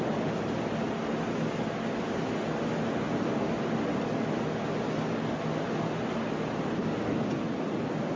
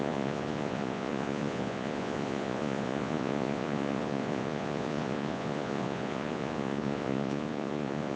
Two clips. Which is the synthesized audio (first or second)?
second